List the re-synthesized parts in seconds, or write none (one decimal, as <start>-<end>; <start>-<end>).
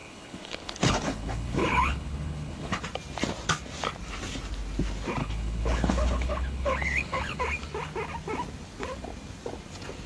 0.0-2.8; 5.2-7.4